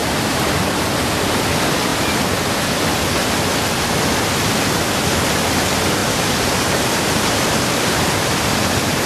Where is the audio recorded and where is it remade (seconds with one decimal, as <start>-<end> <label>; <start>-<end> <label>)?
0.0-0.8 remade; 0.8-6.0 recorded; 6.0-9.1 remade